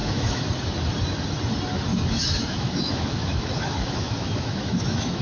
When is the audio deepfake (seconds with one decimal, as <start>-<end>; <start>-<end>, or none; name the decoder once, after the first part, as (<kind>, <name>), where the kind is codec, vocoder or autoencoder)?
0.0-0.5 (autoencoder, DAC-VAE); 1.9-5.2